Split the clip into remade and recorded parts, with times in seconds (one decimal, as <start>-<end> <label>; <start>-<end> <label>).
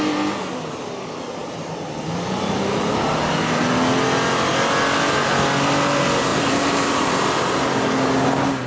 0.0-1.4 recorded; 1.4-3.6 remade; 3.6-6.3 recorded; 6.3-7.1 remade; 7.1-8.7 recorded